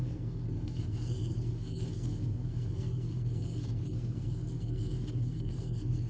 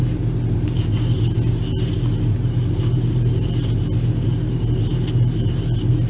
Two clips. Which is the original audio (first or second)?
second